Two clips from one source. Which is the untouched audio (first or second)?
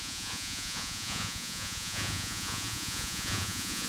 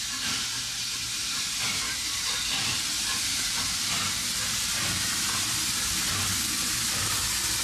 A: second